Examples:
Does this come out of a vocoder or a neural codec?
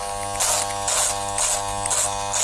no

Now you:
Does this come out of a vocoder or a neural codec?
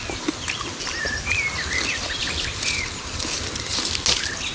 no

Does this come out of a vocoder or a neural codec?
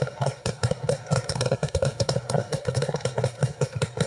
yes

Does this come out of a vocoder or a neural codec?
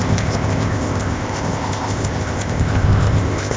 yes